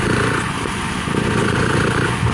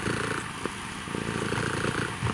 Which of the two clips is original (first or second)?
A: second